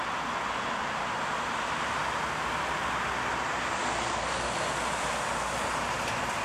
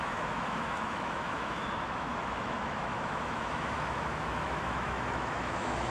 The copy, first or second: second